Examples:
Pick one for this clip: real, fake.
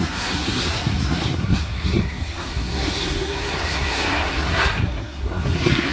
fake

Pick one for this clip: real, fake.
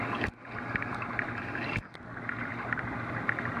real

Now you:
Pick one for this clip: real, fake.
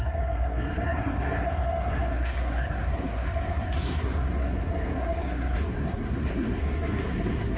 fake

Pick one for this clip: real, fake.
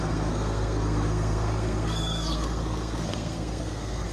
fake